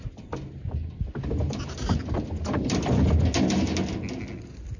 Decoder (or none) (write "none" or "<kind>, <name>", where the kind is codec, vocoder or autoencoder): none